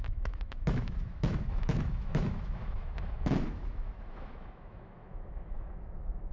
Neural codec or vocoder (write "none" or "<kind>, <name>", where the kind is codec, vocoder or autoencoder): autoencoder, DAC-VAE